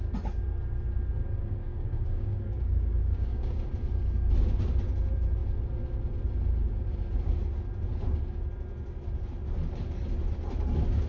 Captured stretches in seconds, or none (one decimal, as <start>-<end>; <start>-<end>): 0.0-1.4; 3.6-11.1